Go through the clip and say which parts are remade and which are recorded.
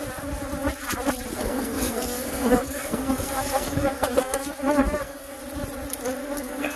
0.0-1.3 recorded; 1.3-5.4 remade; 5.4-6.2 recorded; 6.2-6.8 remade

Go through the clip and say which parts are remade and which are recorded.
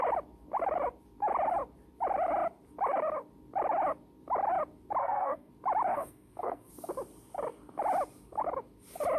0.0-5.0 recorded; 5.0-5.5 remade; 5.5-5.9 recorded; 5.9-6.7 remade; 6.7-9.2 recorded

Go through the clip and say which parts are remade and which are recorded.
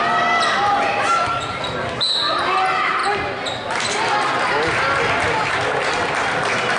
0.0-6.8 recorded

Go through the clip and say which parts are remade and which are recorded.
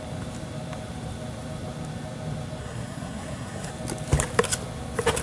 0.0-2.6 recorded; 2.6-3.7 remade; 3.7-5.2 recorded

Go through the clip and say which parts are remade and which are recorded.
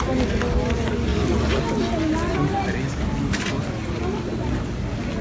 0.0-5.2 recorded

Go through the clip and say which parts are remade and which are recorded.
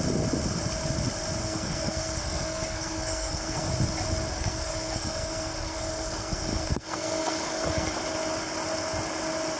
0.0-1.4 recorded; 1.4-3.7 remade; 3.7-4.3 recorded; 4.3-7.9 remade; 7.9-9.6 recorded